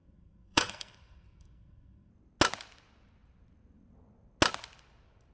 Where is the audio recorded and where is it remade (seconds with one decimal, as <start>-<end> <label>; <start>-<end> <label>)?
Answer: 0.0-2.1 remade; 2.1-5.3 recorded